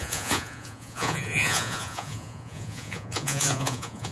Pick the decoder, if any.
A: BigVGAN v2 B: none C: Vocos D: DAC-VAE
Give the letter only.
C